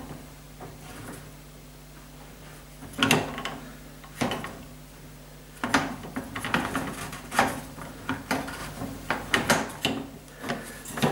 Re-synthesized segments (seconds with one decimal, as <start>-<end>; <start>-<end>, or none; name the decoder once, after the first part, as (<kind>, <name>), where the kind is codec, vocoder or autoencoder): none